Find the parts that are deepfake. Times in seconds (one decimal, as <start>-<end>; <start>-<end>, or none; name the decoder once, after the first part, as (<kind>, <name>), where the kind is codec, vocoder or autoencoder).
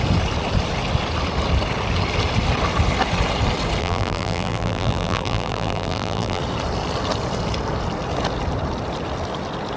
3.8-6.4 (vocoder, BigVGAN v2)